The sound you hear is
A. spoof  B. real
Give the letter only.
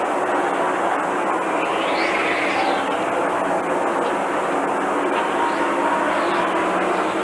B